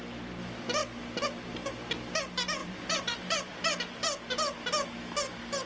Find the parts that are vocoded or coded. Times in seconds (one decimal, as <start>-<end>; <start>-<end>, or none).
2.6-3.5